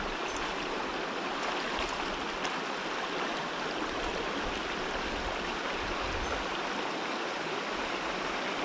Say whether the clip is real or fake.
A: real